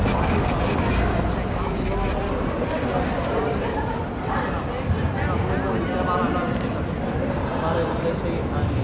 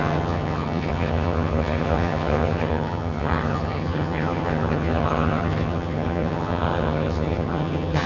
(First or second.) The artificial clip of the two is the second